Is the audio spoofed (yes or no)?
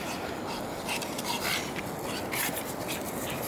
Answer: no